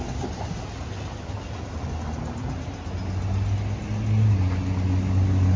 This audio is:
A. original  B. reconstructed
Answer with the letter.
A